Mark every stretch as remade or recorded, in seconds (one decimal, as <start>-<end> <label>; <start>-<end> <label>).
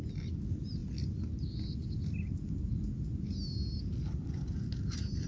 0.0-5.3 recorded